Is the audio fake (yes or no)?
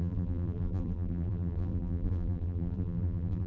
yes